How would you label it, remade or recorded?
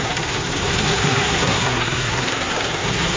remade